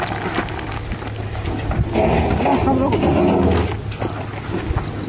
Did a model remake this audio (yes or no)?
no